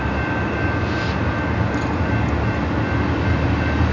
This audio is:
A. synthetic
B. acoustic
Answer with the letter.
B